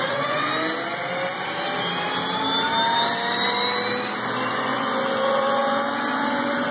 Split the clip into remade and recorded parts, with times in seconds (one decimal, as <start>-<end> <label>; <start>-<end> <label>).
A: 0.0-0.5 remade; 0.5-4.5 recorded; 4.5-6.7 remade